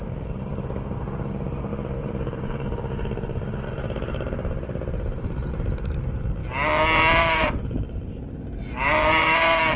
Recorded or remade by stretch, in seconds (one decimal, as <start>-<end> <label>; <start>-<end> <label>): 0.0-6.4 remade; 6.4-7.2 recorded; 7.2-9.8 remade